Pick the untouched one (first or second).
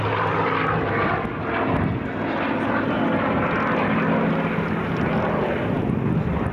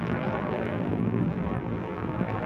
first